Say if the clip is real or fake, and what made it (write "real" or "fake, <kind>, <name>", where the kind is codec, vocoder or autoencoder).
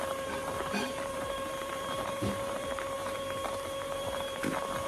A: fake, vocoder, BigVGAN v2